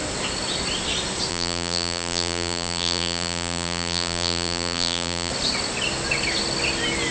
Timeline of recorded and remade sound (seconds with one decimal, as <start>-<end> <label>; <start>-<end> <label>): 0.0-1.3 recorded; 1.3-5.3 remade; 5.3-7.1 recorded

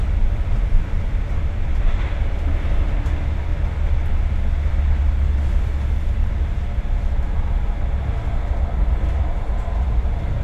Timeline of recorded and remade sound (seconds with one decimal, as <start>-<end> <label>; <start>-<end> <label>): 0.0-10.4 recorded

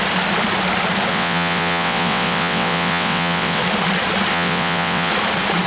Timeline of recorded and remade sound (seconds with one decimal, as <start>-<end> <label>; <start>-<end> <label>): 0.0-1.1 recorded; 1.1-3.6 remade; 3.6-4.3 recorded; 4.3-5.1 remade; 5.1-5.7 recorded